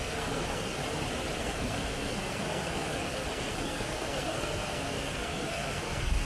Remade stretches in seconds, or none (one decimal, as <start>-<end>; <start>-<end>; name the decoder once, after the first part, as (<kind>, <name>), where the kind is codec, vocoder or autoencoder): 0.0-0.8 (codec, SNAC); 1.4-6.2

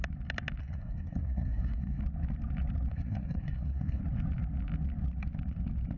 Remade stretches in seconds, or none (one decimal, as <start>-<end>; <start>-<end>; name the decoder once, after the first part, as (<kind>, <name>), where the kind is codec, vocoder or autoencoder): 0.6-2.0 (codec, SNAC); 2.9-4.0

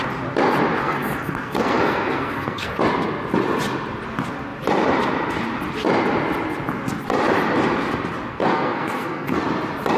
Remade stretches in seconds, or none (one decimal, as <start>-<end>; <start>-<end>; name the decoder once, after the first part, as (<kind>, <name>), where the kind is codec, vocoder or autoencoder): 0.8-2.7 (codec, SNAC); 8.3-9.4